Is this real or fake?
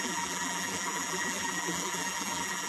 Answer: fake